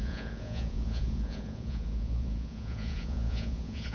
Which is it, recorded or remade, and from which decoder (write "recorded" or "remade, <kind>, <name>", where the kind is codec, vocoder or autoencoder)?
remade, vocoder, Vocos